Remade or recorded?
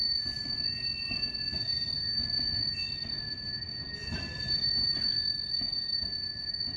recorded